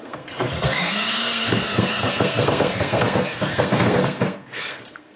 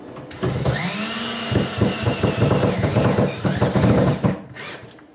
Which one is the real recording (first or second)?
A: second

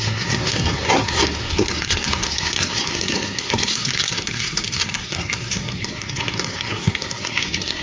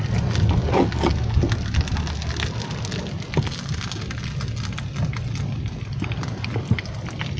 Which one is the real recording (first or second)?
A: second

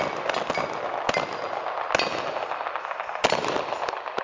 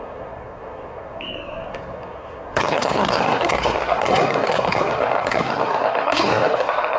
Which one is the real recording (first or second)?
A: first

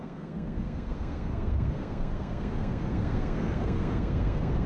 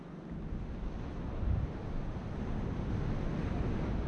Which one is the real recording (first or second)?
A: second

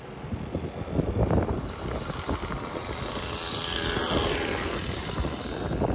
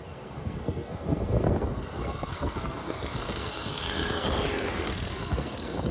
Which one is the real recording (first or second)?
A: first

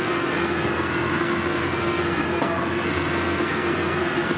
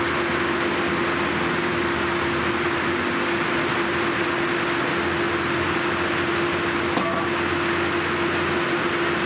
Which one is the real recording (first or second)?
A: second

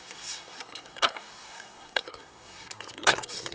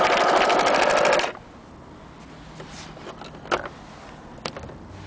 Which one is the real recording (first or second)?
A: second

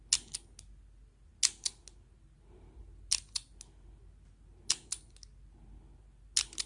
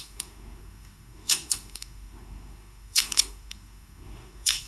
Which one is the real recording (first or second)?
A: first